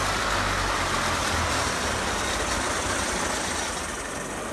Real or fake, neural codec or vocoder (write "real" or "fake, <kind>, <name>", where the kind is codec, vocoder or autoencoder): real